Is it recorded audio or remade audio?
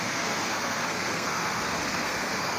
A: remade